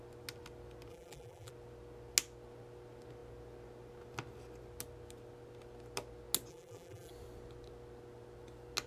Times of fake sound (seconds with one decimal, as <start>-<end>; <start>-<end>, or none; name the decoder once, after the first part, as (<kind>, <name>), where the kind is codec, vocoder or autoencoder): 0.9-1.5 (vocoder, BigVGAN v2); 6.5-7.1